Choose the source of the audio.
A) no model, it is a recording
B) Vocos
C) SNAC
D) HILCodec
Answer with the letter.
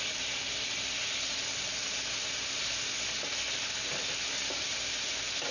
A